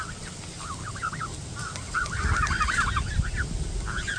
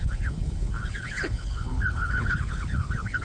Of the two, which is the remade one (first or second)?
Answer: second